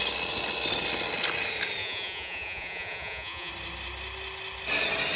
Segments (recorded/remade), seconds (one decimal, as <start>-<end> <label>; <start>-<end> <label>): 0.0-1.8 recorded; 1.8-3.5 remade; 3.5-5.2 recorded